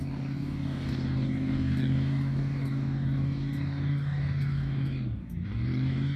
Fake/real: fake